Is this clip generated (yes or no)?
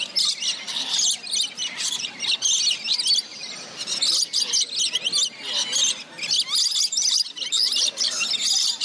no